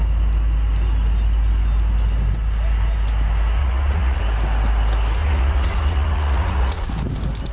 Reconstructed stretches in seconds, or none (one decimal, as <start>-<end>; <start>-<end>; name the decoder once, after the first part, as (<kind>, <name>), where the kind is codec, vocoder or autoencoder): 3.6-4.2 (vocoder, Vocos); 5.2-6.9